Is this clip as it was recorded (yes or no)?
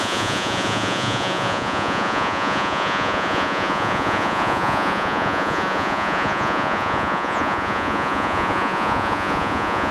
no